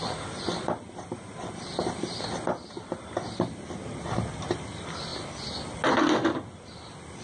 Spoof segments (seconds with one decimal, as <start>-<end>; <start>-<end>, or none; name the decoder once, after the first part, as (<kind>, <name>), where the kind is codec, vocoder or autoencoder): none